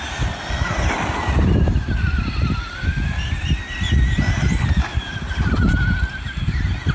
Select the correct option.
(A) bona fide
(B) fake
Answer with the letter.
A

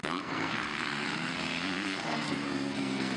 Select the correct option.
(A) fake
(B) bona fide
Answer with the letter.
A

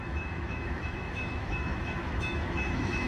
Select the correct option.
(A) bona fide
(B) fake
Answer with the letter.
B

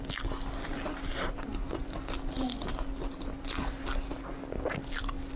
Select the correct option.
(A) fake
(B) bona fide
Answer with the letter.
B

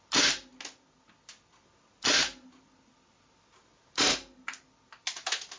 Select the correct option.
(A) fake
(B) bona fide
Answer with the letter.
B